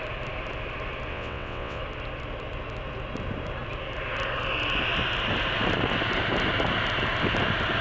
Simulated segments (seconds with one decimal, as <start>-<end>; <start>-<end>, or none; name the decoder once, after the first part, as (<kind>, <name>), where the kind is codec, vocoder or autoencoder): 1.1-1.8 (vocoder, WaveNeXt)